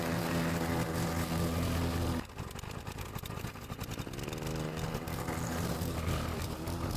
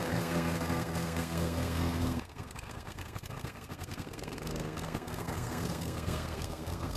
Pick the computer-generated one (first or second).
second